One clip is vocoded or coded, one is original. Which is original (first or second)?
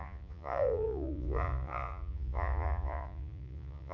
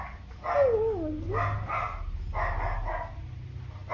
second